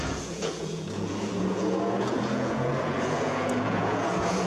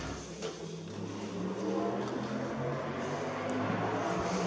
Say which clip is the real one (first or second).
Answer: second